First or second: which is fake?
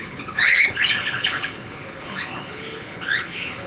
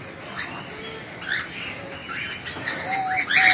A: first